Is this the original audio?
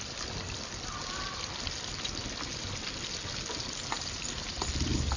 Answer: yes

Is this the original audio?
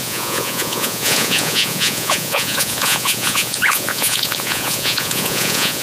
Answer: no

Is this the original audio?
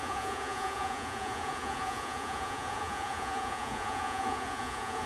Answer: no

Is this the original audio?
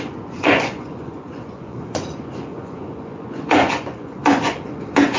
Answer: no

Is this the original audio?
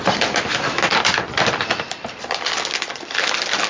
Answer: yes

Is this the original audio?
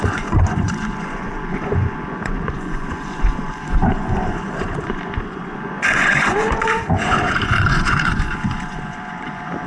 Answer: no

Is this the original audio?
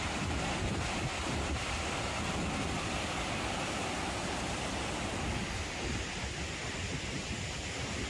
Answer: yes